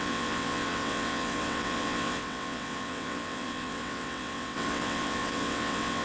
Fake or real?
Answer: fake